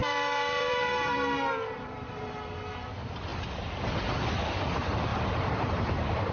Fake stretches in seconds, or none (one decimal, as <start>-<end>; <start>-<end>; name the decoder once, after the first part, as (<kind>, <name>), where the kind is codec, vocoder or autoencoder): 0.0-2.2 (vocoder, BigVGAN v2); 3.3-3.8; 5.1-6.3